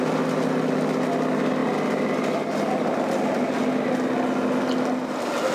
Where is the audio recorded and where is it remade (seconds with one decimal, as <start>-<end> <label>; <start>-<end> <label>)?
0.0-5.5 recorded